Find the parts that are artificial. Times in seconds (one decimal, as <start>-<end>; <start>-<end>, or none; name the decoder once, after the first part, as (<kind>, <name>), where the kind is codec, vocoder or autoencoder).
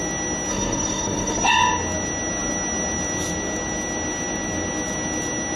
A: 0.5-1.5 (codec, SNAC)